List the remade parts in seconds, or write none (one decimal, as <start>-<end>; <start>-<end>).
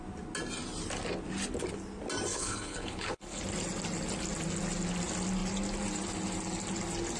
2.3-3.4